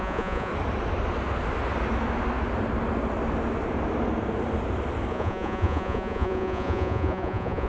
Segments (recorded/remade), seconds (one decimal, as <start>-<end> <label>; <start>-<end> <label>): 0.0-0.5 remade; 0.5-5.1 recorded; 5.1-7.7 remade